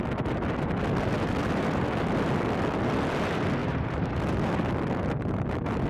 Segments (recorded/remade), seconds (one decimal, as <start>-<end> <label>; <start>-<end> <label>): 0.0-3.6 recorded; 3.6-4.1 remade; 4.1-5.9 recorded